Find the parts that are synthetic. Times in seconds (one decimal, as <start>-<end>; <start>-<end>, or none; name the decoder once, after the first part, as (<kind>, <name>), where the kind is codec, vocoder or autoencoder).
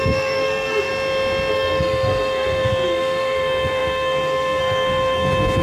0.0-0.9 (codec, SNAC); 1.5-5.6